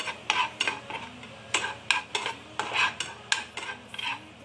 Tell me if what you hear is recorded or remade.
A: recorded